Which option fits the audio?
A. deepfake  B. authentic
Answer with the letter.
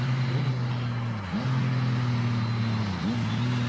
B